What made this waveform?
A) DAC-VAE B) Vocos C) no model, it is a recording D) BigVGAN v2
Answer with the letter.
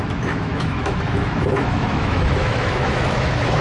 A